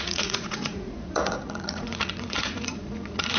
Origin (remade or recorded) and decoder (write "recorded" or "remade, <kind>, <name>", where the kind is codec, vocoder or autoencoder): remade, vocoder, Vocos